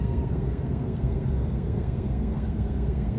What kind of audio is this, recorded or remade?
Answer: remade